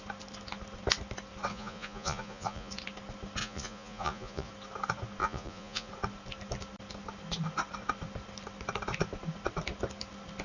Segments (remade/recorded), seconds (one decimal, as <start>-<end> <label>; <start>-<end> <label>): 0.0-1.5 recorded; 1.5-2.7 remade; 2.7-3.4 recorded; 3.4-4.5 remade; 4.5-5.2 recorded; 5.2-5.9 remade; 5.9-10.4 recorded